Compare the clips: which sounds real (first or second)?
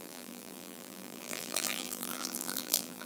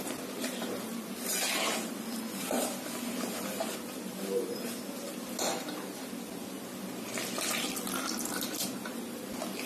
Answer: second